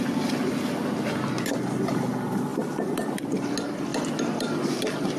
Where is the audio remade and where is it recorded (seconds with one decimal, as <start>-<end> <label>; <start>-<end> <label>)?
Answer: 0.0-5.2 recorded